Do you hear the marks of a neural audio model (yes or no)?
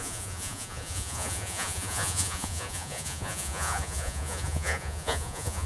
yes